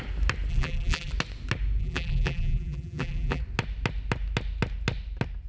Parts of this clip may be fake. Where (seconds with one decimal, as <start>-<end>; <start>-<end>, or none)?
0.5-1.1; 1.8-3.4